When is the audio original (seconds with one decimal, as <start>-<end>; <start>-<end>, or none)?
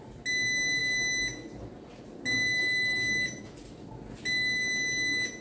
0.0-5.4